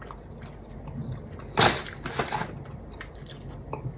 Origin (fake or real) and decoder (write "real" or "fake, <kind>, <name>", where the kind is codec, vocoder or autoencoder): real